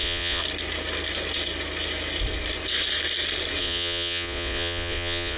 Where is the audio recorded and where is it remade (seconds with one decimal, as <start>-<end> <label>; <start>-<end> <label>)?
0.0-0.4 remade; 0.4-3.6 recorded; 3.6-5.4 remade

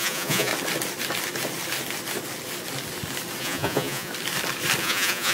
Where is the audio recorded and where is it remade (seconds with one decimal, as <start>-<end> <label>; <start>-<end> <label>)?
0.0-0.5 remade; 0.5-3.4 recorded; 3.4-4.1 remade; 4.1-4.8 recorded; 4.8-5.3 remade

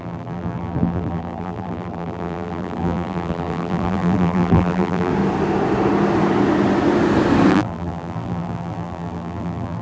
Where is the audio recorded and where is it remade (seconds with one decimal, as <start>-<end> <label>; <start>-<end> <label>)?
0.0-5.1 remade; 5.1-7.5 recorded; 7.5-9.8 remade

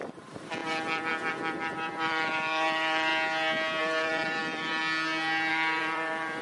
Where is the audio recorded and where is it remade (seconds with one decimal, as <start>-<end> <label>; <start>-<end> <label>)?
0.0-3.1 remade; 3.1-3.8 recorded; 3.8-4.8 remade; 4.8-5.5 recorded; 5.5-6.4 remade

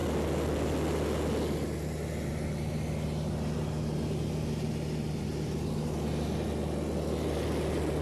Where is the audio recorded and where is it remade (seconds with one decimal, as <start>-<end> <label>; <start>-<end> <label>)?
0.0-8.0 recorded

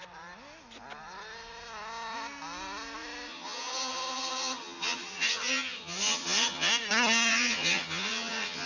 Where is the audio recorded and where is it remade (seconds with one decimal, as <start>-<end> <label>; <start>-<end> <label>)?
0.0-3.3 recorded; 3.3-6.7 remade; 6.7-7.3 recorded; 7.3-8.7 remade